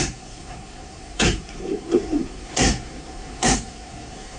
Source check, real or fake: fake